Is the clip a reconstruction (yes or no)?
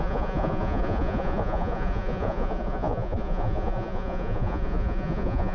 yes